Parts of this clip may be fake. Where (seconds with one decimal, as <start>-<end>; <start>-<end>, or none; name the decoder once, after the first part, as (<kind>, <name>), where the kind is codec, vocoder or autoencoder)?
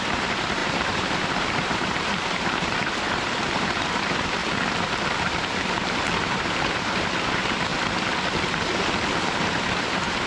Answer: 0.0-4.4 (vocoder, BigVGAN v2); 5.2-7.7; 9.4-10.3